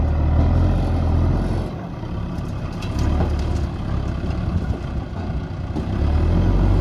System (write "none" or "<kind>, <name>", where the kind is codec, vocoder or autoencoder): none